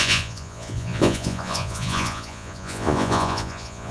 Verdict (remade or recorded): remade